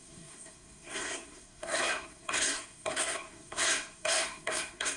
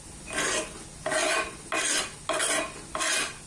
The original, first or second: second